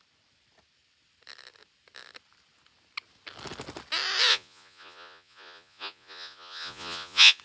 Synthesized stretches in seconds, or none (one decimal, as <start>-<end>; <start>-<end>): 4.3-7.4